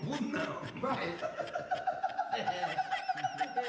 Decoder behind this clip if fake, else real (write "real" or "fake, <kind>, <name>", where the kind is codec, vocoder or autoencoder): real